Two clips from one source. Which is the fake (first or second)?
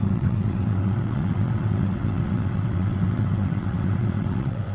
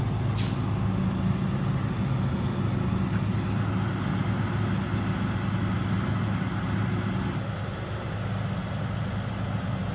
first